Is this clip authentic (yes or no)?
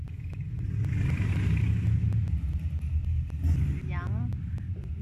yes